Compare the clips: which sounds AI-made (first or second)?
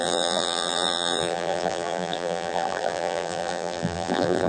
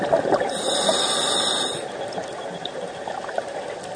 first